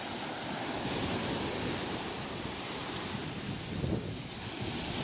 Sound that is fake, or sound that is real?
real